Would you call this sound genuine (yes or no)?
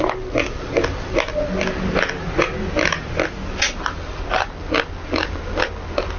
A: yes